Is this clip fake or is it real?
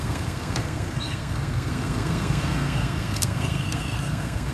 fake